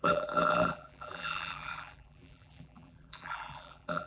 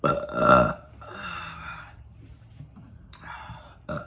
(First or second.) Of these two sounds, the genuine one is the second